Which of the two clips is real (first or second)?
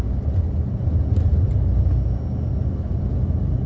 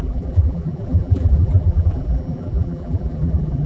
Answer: first